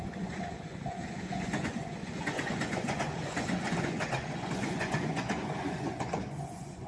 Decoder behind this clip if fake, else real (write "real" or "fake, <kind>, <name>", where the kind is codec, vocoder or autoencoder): fake, vocoder, Vocos